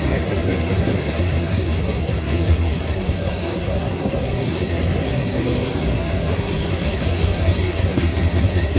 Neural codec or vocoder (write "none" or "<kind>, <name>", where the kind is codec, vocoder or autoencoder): codec, SNAC